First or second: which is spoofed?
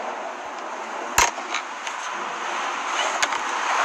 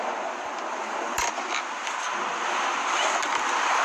second